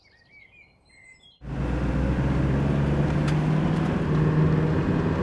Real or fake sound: real